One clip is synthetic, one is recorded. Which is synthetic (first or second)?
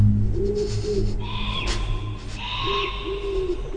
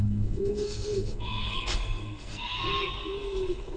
second